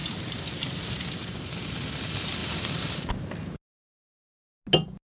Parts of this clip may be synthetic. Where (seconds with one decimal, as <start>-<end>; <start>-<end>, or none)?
0.0-1.7; 2.4-3.1